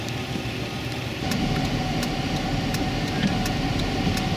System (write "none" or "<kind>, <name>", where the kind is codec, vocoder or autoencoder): none